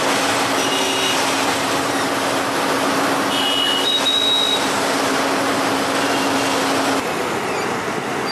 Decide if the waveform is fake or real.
real